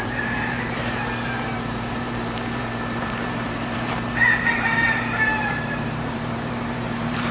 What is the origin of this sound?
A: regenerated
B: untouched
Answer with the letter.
A